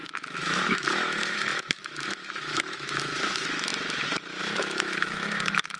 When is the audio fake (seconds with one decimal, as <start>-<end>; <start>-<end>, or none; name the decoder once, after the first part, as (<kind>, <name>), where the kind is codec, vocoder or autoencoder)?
0.0-3.7 (autoencoder, DAC-VAE); 4.4-5.8